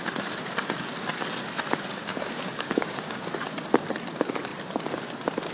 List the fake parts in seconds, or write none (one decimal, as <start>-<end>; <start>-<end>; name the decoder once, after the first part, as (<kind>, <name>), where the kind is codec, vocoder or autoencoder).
2.1-3.3 (codec, DAC)